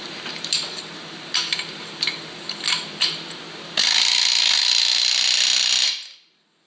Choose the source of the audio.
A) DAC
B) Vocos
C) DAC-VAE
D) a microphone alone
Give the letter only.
D